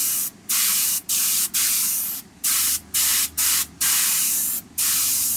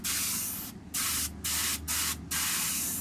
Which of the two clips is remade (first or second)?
first